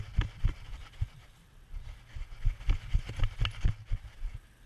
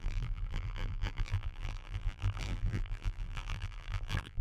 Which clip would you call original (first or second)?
first